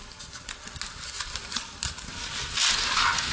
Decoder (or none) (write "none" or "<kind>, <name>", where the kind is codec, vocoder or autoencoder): none